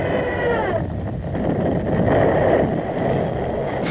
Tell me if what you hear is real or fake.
real